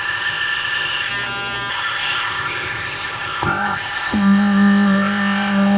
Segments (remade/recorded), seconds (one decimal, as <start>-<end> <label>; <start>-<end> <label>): 0.0-1.1 remade; 1.1-1.7 recorded; 1.7-5.8 remade